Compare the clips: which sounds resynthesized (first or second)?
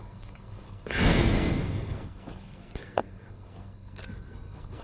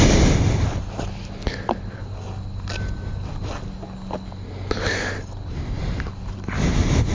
first